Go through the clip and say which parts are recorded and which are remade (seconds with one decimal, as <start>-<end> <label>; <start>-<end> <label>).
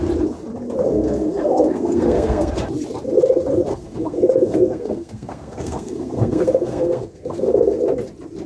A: 0.0-0.8 recorded; 0.8-2.5 remade; 2.5-3.7 recorded; 3.7-7.8 remade; 7.8-8.5 recorded